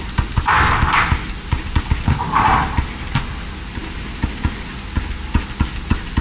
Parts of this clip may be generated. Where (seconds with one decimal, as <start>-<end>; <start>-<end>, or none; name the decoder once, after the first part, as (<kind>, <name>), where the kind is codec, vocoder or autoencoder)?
none